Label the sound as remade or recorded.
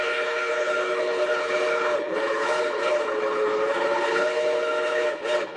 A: remade